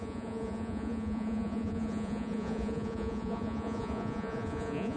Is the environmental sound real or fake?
fake